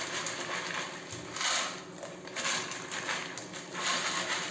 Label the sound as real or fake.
real